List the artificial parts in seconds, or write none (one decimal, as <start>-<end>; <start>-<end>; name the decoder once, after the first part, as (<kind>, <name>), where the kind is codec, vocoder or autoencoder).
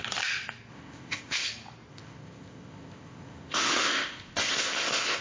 0.7-1.5 (codec, ZipCodec); 1.9-5.2